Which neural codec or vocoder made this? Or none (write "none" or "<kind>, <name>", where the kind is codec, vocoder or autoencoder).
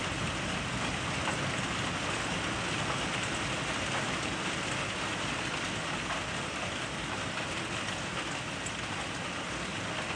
none